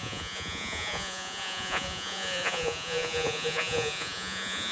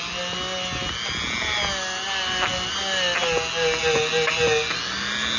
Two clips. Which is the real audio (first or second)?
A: second